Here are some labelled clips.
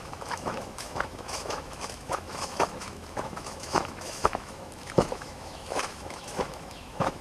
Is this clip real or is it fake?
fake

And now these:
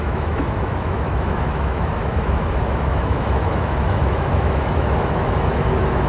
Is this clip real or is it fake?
fake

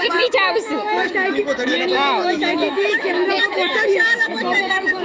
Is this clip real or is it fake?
fake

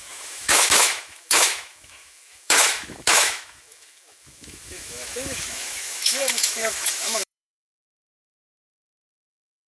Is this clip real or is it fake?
fake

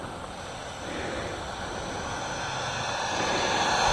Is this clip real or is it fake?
real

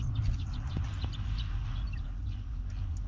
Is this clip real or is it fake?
real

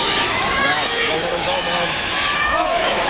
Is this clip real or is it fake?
fake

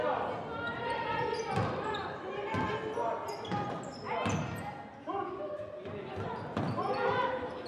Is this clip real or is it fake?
real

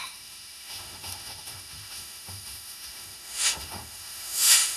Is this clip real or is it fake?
fake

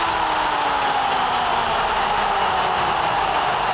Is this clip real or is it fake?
real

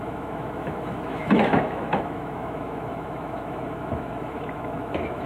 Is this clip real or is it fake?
fake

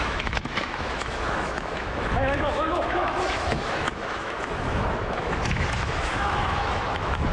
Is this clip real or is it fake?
fake